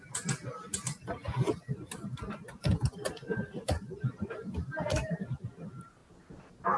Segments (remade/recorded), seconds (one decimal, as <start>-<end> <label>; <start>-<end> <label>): 0.0-6.8 recorded